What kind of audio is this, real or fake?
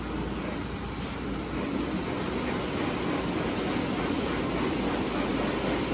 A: real